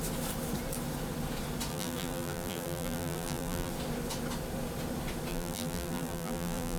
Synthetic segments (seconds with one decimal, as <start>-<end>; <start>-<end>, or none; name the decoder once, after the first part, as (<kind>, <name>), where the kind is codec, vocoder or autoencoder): 1.7-3.7 (vocoder, BigVGAN v2); 5.3-6.8